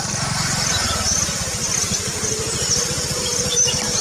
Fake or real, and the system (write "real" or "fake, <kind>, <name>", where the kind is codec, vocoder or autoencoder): real